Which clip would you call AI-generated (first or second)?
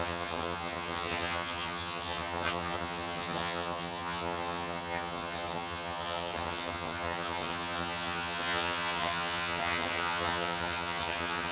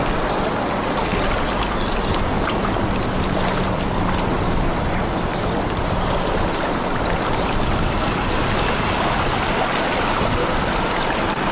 first